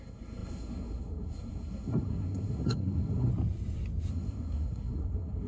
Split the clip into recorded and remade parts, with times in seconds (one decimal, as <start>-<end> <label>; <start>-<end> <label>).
0.0-3.3 remade; 3.3-4.1 recorded; 4.1-5.5 remade